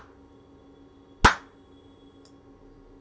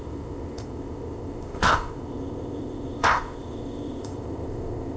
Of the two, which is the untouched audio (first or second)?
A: first